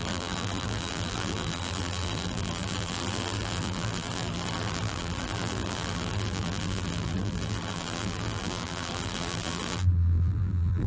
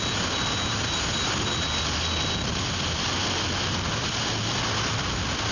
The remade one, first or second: first